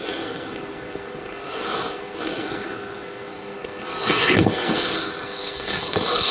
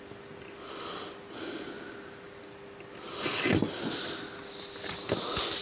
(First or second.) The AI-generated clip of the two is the first